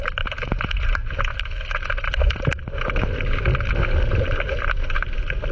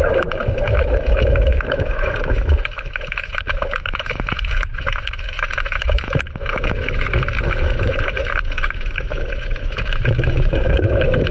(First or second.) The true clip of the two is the first